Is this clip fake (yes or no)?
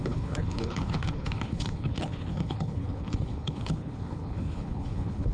yes